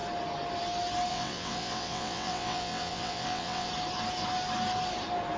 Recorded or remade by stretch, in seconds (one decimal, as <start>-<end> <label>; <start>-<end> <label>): 0.0-1.1 recorded; 1.1-3.7 remade; 3.7-5.4 recorded